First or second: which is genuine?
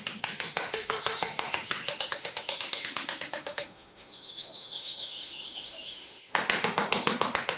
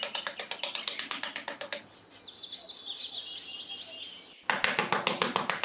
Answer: second